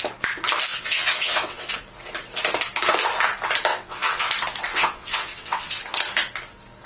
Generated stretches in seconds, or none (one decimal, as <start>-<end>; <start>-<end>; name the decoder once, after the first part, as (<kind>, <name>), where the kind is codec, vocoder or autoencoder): 0.7-1.7 (vocoder, WaveNeXt); 3.7-4.3; 4.7-5.8